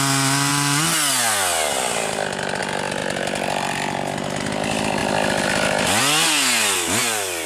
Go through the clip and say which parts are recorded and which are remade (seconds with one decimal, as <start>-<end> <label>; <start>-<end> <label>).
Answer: 0.0-5.0 recorded; 5.0-6.0 remade; 6.0-7.5 recorded